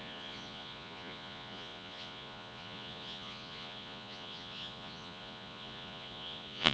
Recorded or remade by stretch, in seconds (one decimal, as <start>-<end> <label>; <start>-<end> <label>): 0.0-6.7 remade